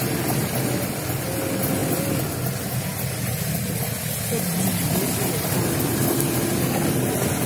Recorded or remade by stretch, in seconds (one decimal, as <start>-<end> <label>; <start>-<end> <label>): 0.0-7.5 recorded

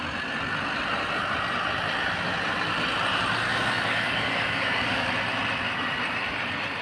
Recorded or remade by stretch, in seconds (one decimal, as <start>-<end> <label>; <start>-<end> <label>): 0.0-3.5 recorded; 3.5-5.1 remade; 5.1-6.8 recorded

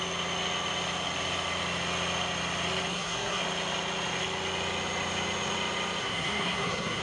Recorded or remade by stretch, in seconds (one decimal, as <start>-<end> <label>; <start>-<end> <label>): 0.0-2.9 recorded; 2.9-3.4 remade; 3.4-6.0 recorded; 6.0-7.0 remade

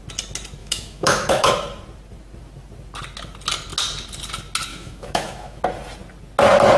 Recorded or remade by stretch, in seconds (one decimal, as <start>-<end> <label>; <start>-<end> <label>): 0.0-0.6 recorded; 0.6-1.5 remade; 1.5-4.7 recorded; 4.7-5.6 remade; 5.6-6.8 recorded